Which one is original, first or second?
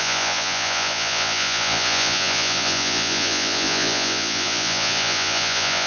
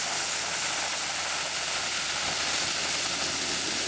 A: second